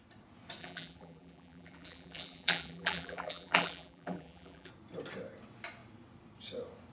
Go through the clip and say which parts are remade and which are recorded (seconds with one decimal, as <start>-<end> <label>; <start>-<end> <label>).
0.0-0.6 recorded; 0.6-4.7 remade; 4.7-6.9 recorded